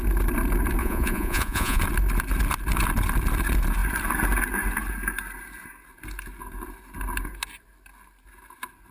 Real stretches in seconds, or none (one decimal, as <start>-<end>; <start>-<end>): 0.0-0.8; 1.8-8.9